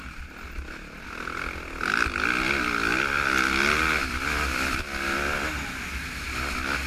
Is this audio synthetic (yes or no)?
no